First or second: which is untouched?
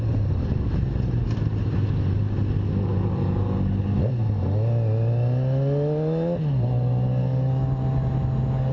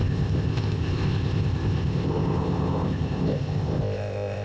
first